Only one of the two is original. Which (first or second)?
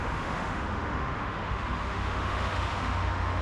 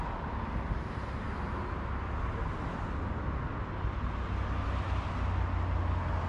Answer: second